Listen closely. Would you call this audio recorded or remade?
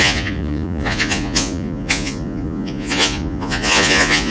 remade